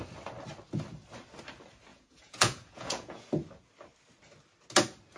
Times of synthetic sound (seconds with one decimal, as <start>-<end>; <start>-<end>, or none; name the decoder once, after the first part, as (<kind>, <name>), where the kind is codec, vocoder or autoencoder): 1.9-3.3 (vocoder, Vocos)